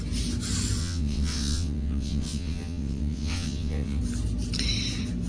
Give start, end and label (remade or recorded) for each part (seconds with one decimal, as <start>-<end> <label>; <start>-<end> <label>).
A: 0.0-0.8 recorded; 0.8-4.0 remade; 4.0-5.3 recorded